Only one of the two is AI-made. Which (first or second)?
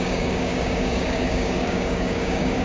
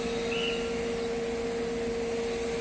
first